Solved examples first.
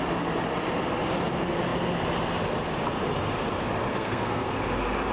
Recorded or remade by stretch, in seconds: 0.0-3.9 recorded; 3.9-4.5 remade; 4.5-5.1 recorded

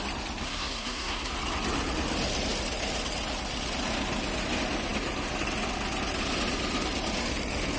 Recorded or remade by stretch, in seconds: 0.0-0.4 recorded; 0.4-1.3 remade; 1.3-7.8 recorded

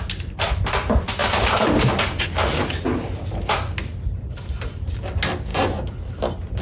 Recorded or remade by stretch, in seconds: 0.0-6.6 recorded